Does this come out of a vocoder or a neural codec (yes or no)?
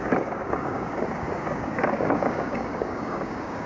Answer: yes